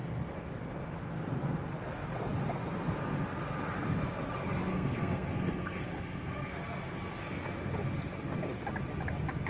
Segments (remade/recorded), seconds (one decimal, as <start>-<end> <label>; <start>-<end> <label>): 0.0-4.7 recorded; 4.7-6.5 remade; 6.5-9.5 recorded